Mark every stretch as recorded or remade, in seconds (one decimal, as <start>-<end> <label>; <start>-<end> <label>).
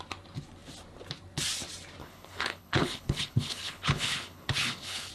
0.0-2.0 recorded; 2.0-5.1 remade